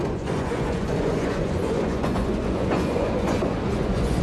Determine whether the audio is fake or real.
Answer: fake